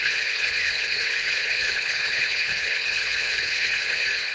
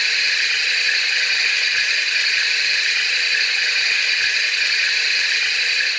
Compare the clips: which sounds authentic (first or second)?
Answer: second